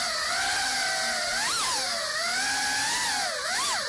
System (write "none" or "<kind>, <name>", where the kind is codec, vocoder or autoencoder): none